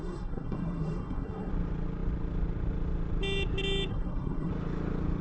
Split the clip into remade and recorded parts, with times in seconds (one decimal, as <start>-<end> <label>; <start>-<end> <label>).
0.0-1.5 remade; 1.5-3.9 recorded; 3.9-4.5 remade; 4.5-5.2 recorded